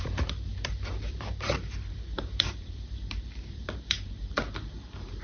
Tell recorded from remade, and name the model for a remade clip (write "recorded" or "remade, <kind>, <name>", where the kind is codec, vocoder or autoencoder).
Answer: remade, vocoder, BigVGAN v2